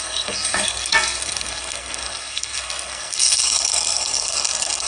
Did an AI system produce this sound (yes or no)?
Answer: yes